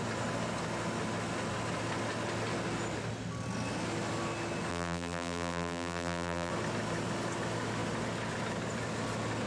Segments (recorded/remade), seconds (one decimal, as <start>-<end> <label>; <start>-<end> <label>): 0.0-4.7 recorded; 4.7-6.5 remade; 6.5-9.5 recorded

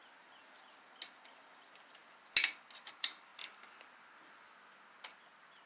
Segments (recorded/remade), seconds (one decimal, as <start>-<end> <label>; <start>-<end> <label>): 0.0-1.1 recorded; 1.1-2.0 remade; 2.0-2.9 recorded; 2.9-3.3 remade; 3.3-5.3 recorded; 5.3-5.7 remade

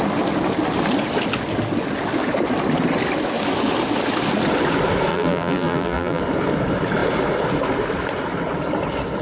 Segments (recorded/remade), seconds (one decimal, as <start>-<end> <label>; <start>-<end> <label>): 0.0-5.1 recorded; 5.1-6.2 remade; 6.2-9.2 recorded

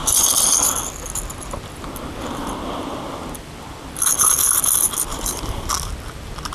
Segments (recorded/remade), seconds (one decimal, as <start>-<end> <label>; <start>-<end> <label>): 0.0-5.1 recorded; 5.1-5.7 remade; 5.7-6.5 recorded

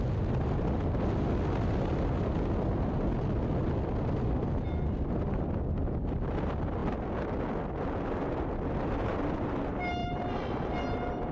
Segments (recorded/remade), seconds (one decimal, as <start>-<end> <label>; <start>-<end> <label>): 0.0-10.0 recorded; 10.0-10.7 remade; 10.7-11.3 recorded